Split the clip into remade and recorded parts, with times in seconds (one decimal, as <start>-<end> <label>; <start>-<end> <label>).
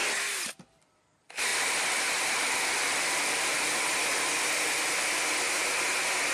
0.0-6.3 recorded